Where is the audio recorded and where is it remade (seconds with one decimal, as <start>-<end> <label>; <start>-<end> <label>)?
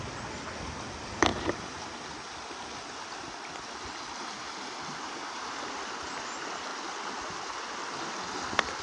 0.0-8.8 recorded